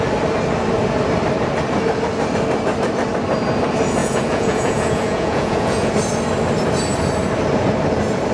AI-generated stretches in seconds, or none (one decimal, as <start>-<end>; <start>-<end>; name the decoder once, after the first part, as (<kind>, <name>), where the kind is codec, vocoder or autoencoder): 4.0-5.9 (vocoder, Vocos)